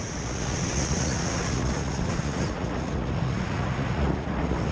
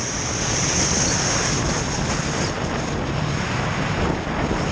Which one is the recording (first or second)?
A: second